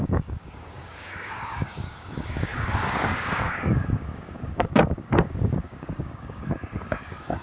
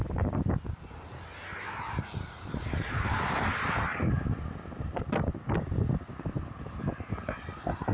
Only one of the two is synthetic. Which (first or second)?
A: first